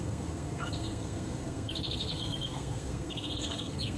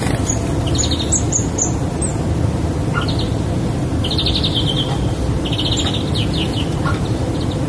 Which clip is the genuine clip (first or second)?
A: second